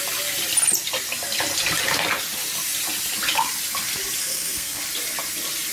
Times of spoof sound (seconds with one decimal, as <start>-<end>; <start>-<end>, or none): 4.2-4.8